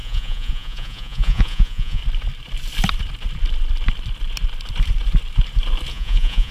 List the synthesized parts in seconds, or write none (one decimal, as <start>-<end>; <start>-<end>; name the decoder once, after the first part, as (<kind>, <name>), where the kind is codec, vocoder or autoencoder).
0.0-2.0 (vocoder, Vocos); 5.9-6.5